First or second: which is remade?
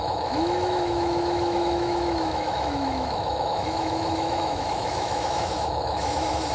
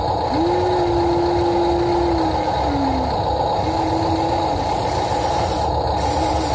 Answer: first